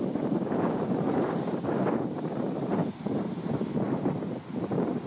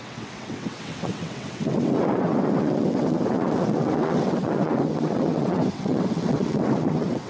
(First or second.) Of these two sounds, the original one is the first